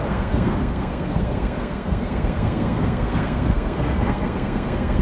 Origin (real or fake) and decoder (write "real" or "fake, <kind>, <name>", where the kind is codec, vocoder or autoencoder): fake, codec, SNAC